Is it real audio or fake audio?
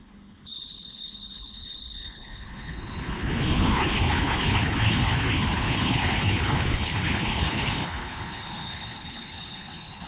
fake